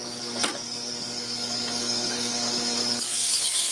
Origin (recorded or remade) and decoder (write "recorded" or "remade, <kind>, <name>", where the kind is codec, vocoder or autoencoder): remade, codec, DAC